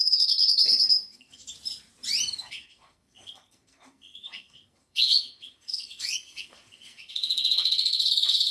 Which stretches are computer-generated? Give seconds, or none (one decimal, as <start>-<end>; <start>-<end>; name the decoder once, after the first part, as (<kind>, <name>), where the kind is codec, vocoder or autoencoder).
0.0-1.4 (codec, SNAC); 2.5-8.5